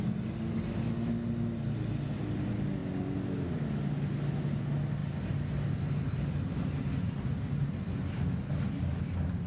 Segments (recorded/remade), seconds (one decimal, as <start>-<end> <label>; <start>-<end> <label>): 0.0-9.5 recorded